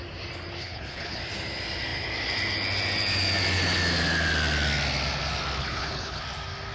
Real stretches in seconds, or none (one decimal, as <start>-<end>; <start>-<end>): 0.0-0.6; 1.2-5.6; 6.2-6.7